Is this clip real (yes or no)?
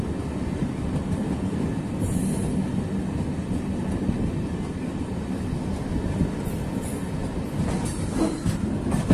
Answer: yes